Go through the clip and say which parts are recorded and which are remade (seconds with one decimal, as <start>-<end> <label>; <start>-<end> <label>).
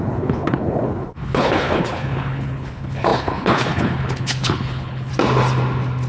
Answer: 0.0-5.1 remade; 5.1-6.1 recorded